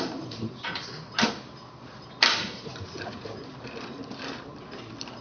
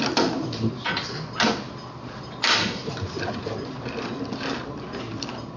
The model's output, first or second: first